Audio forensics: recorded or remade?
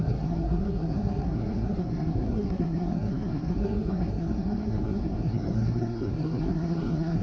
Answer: remade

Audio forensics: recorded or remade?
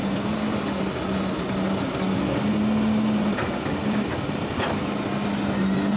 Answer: recorded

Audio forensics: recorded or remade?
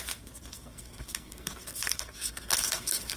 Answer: remade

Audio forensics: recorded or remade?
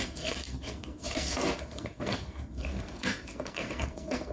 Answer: remade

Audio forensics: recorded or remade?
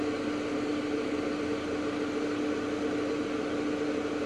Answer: recorded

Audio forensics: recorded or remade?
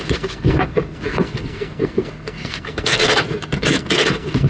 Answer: remade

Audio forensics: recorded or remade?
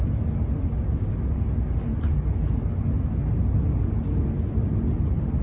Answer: recorded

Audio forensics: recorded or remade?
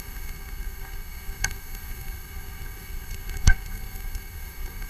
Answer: remade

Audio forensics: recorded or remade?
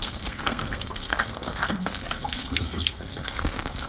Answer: remade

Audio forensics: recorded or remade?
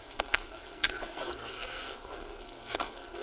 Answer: remade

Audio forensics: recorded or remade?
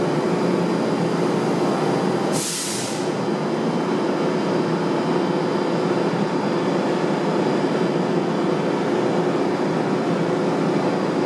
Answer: recorded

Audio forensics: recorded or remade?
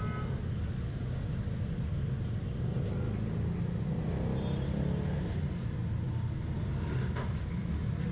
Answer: recorded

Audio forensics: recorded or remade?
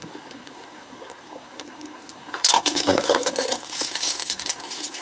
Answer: remade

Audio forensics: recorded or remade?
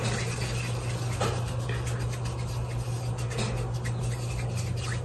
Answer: recorded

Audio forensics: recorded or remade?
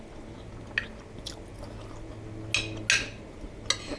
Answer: recorded